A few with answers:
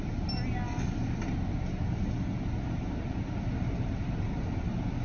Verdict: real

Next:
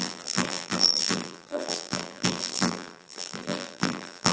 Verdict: fake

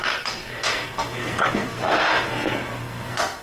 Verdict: fake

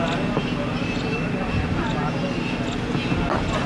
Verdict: real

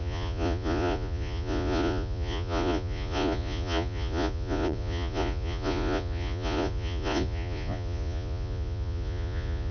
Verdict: fake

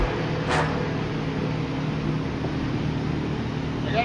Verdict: real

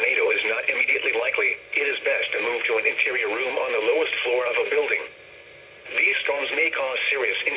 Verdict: fake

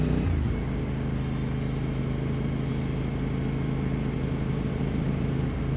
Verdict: real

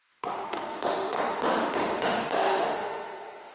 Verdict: fake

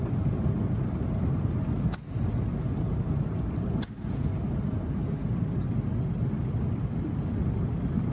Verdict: real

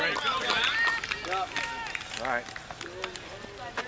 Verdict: real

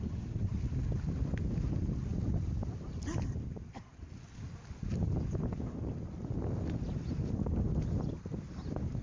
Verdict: real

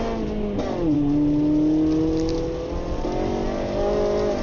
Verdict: real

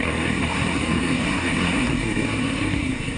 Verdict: fake